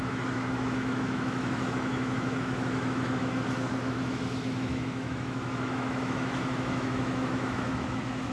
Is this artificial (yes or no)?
yes